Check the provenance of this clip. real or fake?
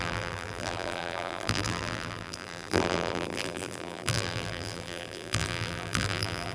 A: fake